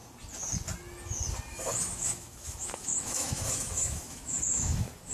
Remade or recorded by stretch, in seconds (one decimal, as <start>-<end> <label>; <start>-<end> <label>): 0.0-1.5 recorded; 1.5-5.1 remade